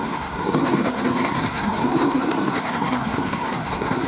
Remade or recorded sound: remade